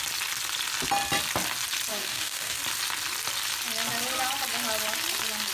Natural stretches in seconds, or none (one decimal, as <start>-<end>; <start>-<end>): 0.0-1.9; 2.6-5.5